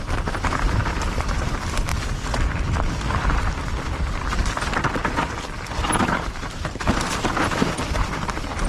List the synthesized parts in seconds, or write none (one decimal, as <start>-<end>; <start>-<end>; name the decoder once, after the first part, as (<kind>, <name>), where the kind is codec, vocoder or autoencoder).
0.0-1.9 (vocoder, BigVGAN v2); 5.8-8.7